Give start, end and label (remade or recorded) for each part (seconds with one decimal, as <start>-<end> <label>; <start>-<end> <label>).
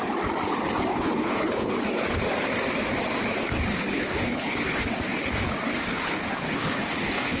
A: 0.0-0.9 recorded; 0.9-1.7 remade; 1.7-3.7 recorded; 3.7-4.9 remade; 4.9-5.7 recorded; 5.7-7.4 remade